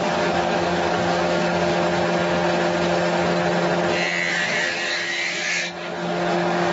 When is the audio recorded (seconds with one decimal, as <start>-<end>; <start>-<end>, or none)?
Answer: 1.7-4.3